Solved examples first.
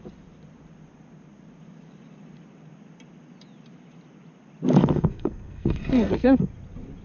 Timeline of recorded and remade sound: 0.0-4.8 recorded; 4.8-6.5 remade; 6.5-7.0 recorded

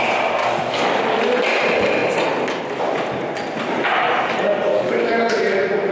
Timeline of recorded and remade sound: 0.0-0.4 recorded; 0.4-0.9 remade; 0.9-4.7 recorded; 4.7-5.3 remade; 5.3-5.9 recorded